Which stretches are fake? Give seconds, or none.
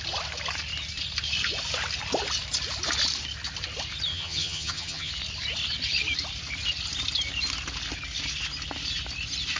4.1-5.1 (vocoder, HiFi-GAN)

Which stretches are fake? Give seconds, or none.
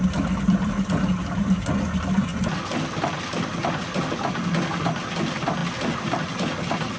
none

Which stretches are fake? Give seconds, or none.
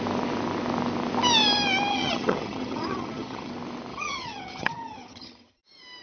1.9-3.5 (vocoder, HiFi-GAN); 3.9-5.6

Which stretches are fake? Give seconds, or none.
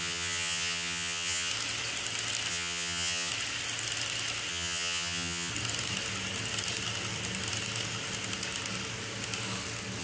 0.0-1.5 (vocoder, HiFi-GAN); 2.5-3.3; 4.5-5.5